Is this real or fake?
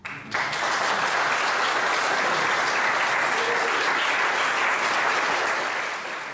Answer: real